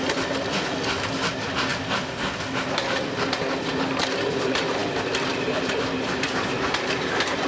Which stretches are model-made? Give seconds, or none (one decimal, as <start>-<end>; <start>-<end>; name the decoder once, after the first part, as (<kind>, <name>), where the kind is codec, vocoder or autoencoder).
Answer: none

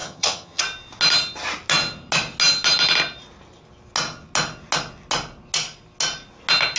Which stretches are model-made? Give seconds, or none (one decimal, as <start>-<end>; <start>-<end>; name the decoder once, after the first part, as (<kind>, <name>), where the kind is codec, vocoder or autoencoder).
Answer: 0.0-0.6 (vocoder, HiFi-GAN)